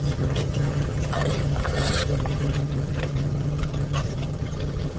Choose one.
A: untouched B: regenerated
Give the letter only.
B